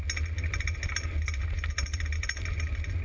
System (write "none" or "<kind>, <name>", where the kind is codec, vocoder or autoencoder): none